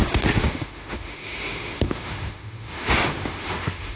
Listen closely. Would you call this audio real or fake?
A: fake